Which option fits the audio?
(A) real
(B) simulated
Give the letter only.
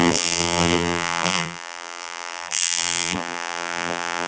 B